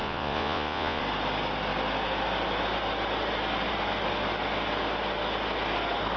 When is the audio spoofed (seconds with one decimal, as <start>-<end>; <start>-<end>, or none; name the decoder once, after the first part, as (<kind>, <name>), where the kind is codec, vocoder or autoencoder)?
0.0-1.0 (vocoder, Vocos)